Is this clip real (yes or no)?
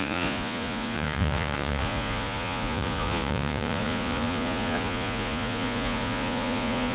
no